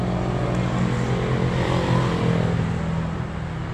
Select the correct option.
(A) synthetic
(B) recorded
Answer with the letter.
B